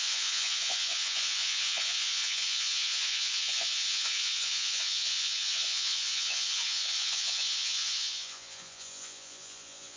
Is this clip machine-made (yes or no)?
yes